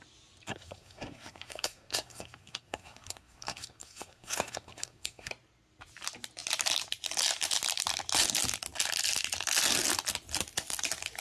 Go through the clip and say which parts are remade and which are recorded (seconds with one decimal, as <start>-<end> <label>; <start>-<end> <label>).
0.0-0.5 recorded; 0.5-5.3 remade; 5.3-11.2 recorded